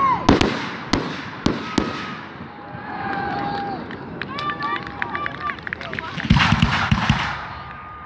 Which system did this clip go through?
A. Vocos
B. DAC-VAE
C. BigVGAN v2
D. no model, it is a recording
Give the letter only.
D